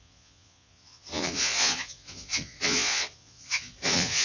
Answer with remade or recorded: remade